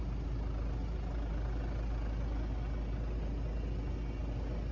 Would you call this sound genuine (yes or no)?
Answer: yes